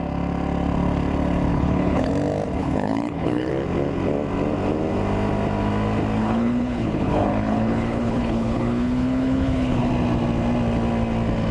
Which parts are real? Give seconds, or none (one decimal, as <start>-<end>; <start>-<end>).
0.0-1.5; 2.1-2.6; 3.5-6.2; 9.9-11.5